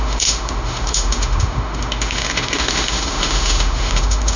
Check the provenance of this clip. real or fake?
fake